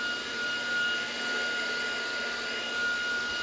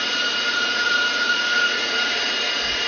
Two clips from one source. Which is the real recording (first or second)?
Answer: first